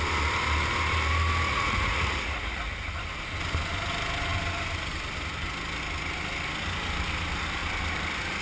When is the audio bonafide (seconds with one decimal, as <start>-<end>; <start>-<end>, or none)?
0.0-1.5; 2.6-8.4